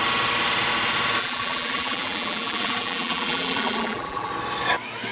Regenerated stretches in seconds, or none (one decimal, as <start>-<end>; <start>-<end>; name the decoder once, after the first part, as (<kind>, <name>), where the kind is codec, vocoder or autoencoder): 1.2-4.3 (vocoder, BigVGAN v2)